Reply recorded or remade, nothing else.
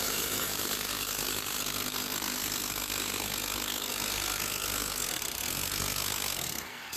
remade